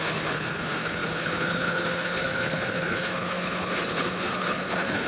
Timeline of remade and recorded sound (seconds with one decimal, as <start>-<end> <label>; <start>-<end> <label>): 0.0-5.1 remade